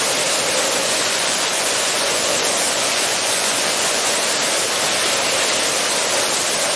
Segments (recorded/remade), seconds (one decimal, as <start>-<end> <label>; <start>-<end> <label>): 0.0-0.8 recorded; 0.8-4.1 remade; 4.1-6.8 recorded